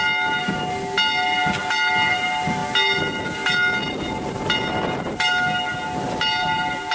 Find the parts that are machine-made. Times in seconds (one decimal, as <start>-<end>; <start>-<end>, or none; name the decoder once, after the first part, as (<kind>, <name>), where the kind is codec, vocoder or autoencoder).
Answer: none